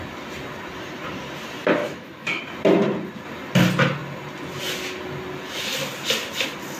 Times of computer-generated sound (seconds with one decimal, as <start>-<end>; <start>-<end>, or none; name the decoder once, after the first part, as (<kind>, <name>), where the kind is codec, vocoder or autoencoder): 1.8-2.4 (autoencoder, DAC-VAE)